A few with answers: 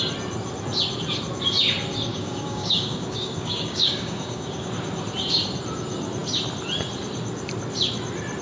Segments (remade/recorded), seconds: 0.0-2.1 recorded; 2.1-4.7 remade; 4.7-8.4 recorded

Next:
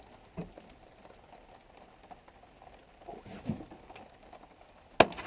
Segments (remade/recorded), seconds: 0.0-5.3 recorded

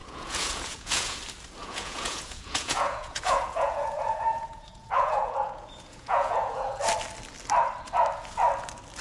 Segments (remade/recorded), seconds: 0.0-1.2 remade; 1.2-1.6 recorded; 1.6-6.8 remade; 6.8-9.0 recorded

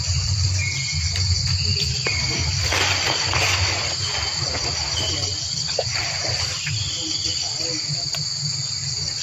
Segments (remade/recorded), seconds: 0.0-0.6 remade; 0.6-1.7 recorded; 1.7-3.8 remade; 3.8-5.1 recorded; 5.1-7.3 remade; 7.3-8.7 recorded; 8.7-9.2 remade

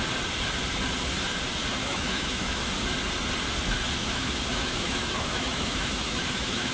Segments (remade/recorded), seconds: 0.0-1.8 recorded; 1.8-2.6 remade; 2.6-4.0 recorded; 4.0-6.7 remade

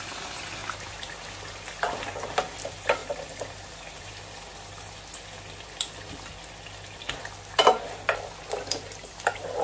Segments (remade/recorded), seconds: 0.0-3.0 recorded; 3.0-4.1 remade; 4.1-9.6 recorded